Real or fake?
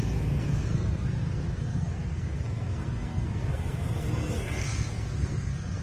fake